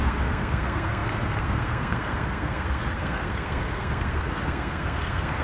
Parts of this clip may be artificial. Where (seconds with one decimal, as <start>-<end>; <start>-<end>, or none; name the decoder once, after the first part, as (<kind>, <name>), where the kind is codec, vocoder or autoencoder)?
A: 0.0-5.4 (codec, SNAC)